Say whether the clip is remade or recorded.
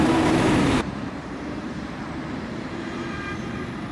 remade